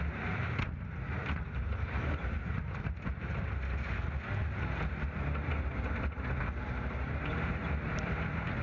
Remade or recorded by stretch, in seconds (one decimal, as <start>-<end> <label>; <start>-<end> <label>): 0.0-3.3 remade; 3.3-4.6 recorded; 4.6-5.5 remade; 5.5-6.6 recorded; 6.6-8.6 remade